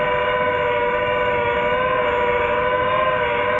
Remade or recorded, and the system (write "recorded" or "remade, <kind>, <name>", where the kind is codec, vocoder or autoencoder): remade, codec, DAC